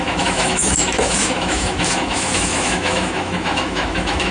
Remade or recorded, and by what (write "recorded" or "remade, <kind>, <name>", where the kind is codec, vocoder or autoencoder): remade, autoencoder, DAC-VAE